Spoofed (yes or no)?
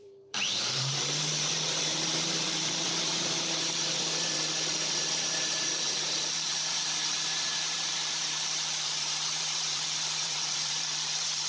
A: yes